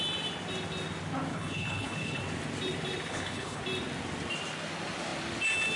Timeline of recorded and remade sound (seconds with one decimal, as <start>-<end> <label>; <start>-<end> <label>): 0.0-1.3 recorded; 1.3-2.2 remade; 2.2-3.1 recorded; 3.1-3.6 remade; 3.6-5.8 recorded